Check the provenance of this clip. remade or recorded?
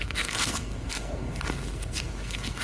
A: remade